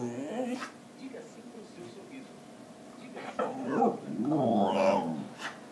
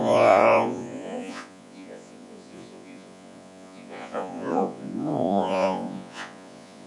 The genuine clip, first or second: first